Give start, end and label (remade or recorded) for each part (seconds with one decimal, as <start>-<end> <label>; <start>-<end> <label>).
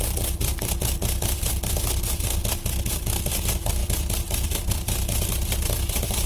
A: 0.0-6.3 remade